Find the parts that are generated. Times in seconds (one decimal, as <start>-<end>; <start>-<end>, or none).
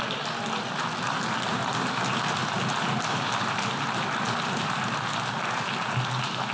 none